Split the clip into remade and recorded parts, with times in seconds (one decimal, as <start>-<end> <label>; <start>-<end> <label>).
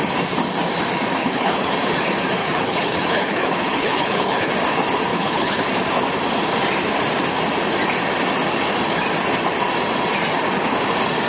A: 0.0-1.2 recorded; 1.2-1.7 remade; 1.7-2.4 recorded; 2.4-4.5 remade; 4.5-5.1 recorded; 5.1-5.6 remade; 5.6-11.3 recorded